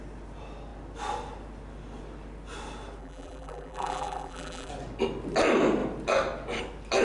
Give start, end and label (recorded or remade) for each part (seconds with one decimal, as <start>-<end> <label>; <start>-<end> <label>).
0.0-3.0 recorded; 3.0-4.7 remade; 4.7-7.0 recorded